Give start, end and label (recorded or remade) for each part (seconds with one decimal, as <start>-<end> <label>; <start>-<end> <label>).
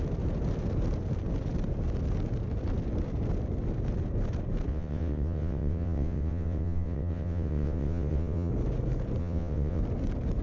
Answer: 0.0-4.7 recorded; 4.7-8.5 remade; 8.5-9.2 recorded; 9.2-9.8 remade; 9.8-10.4 recorded